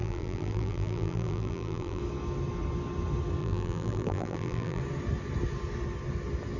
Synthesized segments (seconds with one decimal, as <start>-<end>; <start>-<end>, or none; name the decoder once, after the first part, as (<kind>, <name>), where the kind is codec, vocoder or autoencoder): 0.0-2.0 (vocoder, BigVGAN v2); 3.4-4.8